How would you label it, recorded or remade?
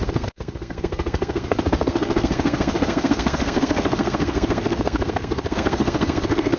remade